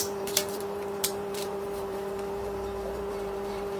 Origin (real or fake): fake